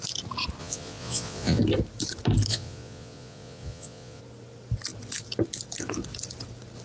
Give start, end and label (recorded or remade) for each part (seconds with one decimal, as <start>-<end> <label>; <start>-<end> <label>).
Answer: 0.0-0.6 recorded; 0.6-1.6 remade; 1.6-2.5 recorded; 2.5-4.2 remade; 4.2-6.8 recorded